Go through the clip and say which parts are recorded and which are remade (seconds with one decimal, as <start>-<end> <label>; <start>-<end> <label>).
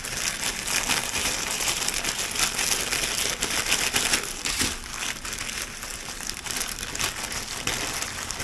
0.0-1.0 recorded; 1.0-1.8 remade; 1.8-5.9 recorded; 5.9-6.8 remade; 6.8-8.4 recorded